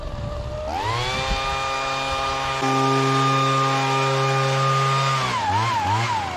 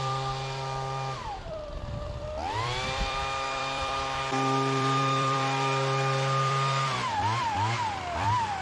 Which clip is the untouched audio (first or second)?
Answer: first